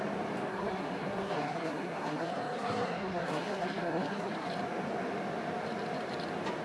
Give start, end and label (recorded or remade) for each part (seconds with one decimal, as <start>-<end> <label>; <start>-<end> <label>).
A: 0.0-0.5 recorded; 0.5-4.5 remade; 4.5-6.6 recorded